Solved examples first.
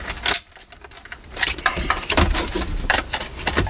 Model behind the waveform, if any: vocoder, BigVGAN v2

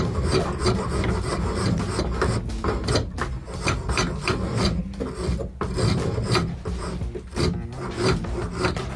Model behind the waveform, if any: none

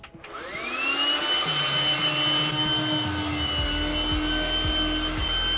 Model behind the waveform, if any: none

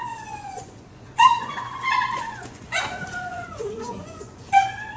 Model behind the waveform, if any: vocoder, Vocos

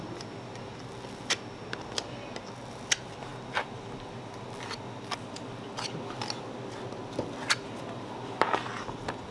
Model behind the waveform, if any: none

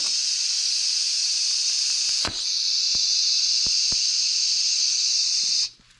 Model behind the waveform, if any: none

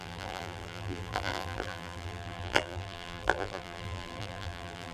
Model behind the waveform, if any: vocoder, BigVGAN v2